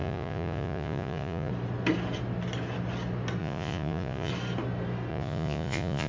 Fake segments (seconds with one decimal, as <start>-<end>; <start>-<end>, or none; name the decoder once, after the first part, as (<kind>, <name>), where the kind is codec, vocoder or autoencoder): 0.0-1.5 (vocoder, Vocos); 3.4-4.3; 5.1-6.1